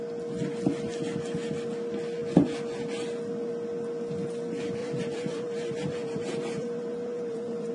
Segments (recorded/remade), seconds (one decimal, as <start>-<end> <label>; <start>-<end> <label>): 0.0-4.8 recorded; 4.8-7.7 remade